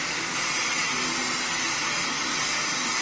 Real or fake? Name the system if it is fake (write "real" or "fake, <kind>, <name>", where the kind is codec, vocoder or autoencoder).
real